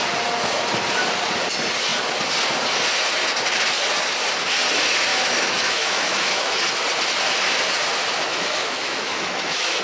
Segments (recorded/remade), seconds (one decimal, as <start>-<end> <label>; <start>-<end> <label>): 0.0-5.1 recorded; 5.1-6.6 remade; 6.6-8.3 recorded; 8.3-9.8 remade